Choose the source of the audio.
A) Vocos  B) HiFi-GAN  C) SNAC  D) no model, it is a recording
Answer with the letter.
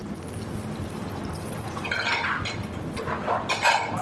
D